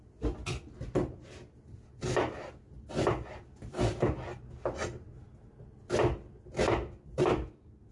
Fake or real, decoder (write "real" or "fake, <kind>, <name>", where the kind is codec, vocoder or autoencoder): real